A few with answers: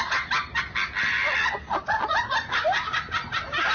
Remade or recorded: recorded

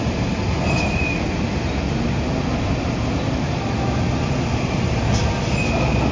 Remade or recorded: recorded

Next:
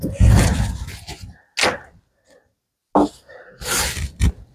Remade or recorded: recorded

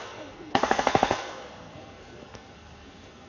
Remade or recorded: remade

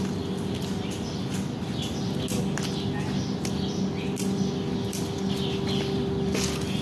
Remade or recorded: recorded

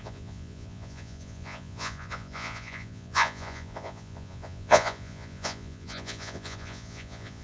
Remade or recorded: remade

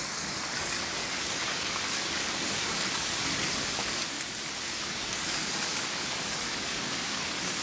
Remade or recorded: remade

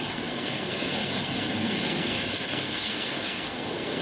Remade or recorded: remade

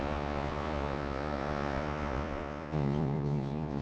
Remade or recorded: remade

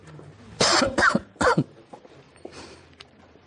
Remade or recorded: remade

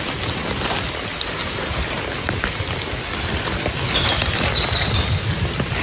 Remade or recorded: recorded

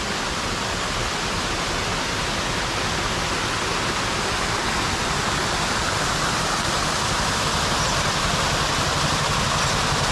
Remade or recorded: recorded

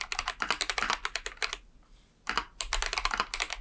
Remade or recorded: recorded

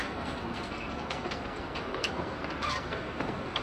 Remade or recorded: remade